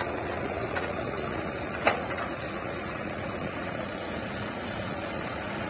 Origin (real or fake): fake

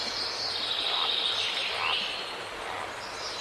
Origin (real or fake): real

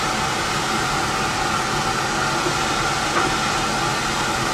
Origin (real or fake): real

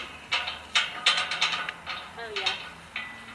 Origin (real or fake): real